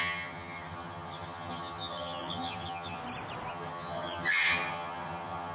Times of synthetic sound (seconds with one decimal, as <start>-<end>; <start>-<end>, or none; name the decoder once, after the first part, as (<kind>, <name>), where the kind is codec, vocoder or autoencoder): 0.0-3.0 (vocoder, HiFi-GAN); 3.5-5.5